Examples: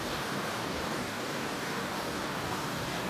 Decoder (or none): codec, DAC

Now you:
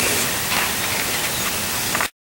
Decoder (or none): none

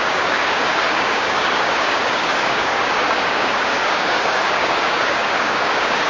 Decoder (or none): codec, DAC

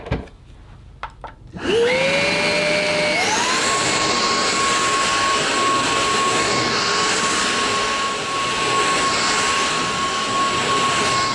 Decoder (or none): none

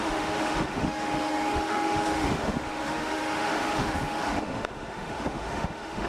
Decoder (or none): autoencoder, DAC-VAE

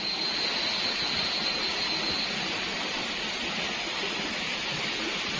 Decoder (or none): none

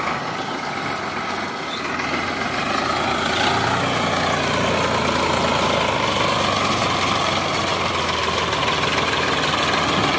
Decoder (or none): none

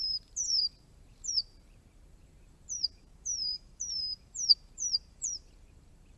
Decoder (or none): vocoder, BigVGAN v2